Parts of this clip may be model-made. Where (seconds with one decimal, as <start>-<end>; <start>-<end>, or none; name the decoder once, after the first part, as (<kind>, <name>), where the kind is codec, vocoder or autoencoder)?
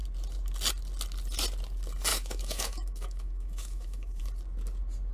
2.1-4.2 (autoencoder, DAC-VAE)